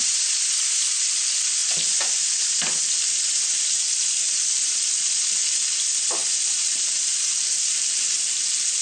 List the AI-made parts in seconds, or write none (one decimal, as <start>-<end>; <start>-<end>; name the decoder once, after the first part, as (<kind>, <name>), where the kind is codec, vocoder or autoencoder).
6.2-7.5 (vocoder, BigVGAN v2)